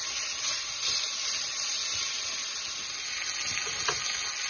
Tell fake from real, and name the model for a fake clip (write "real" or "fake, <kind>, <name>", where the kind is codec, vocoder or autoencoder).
real